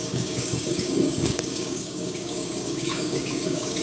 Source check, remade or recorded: remade